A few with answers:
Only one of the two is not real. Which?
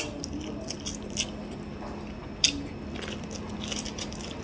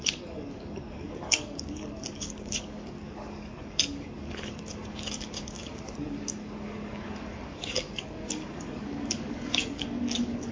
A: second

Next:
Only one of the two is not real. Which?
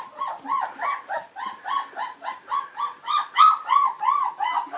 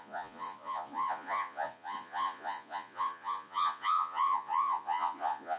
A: second